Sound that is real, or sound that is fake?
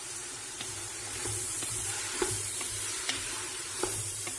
fake